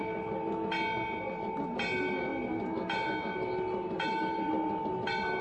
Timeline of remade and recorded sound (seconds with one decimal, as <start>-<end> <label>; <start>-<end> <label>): 0.0-5.4 recorded